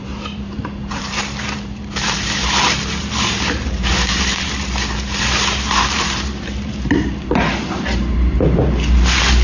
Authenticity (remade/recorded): remade